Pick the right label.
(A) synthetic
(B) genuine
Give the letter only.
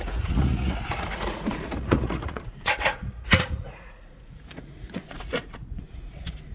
A